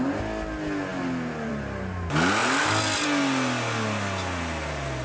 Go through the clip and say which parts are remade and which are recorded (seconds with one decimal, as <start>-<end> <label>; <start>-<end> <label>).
0.0-5.0 recorded